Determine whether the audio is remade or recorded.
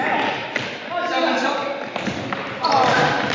recorded